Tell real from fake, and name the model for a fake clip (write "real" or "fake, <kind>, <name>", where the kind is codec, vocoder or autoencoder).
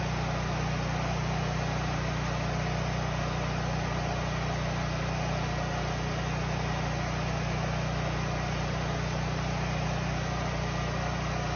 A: real